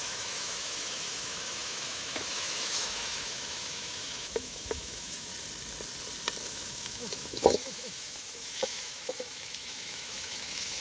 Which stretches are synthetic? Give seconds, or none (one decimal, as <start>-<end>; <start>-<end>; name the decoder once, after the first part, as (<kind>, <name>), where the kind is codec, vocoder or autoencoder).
0.0-5.3 (autoencoder, DAC-VAE); 6.5-10.8